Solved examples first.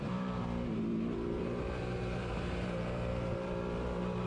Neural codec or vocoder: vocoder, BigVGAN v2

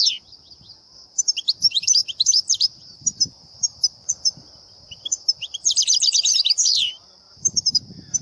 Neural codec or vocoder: vocoder, BigVGAN v2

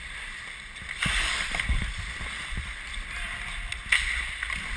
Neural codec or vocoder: none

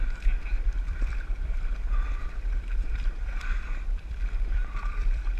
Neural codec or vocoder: vocoder, BigVGAN v2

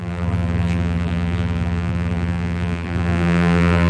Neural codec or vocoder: vocoder, BigVGAN v2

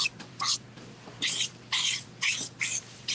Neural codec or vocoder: vocoder, BigVGAN v2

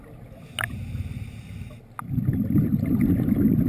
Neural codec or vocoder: none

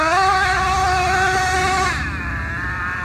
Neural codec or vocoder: none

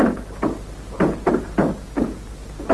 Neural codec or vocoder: none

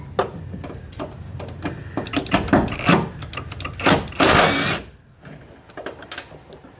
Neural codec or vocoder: none